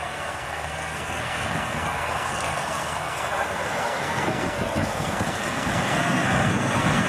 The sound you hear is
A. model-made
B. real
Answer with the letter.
A